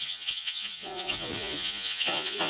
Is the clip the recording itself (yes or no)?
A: no